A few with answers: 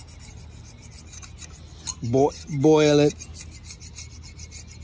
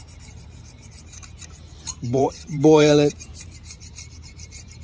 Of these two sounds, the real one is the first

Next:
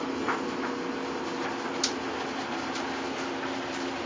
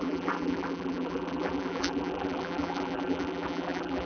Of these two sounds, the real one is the first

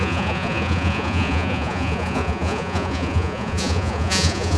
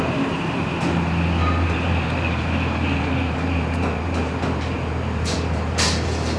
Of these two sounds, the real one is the second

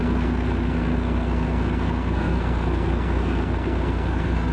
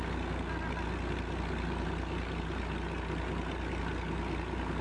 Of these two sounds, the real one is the second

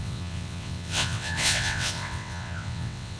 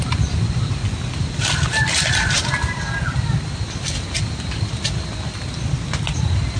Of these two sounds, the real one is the second